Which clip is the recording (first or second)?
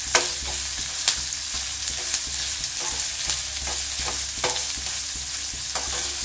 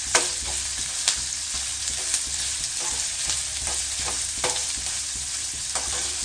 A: first